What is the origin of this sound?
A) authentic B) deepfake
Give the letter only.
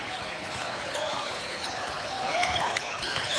B